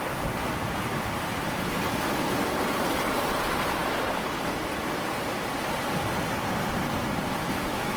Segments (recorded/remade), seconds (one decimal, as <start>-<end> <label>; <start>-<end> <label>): 0.0-7.4 recorded; 7.4-8.0 remade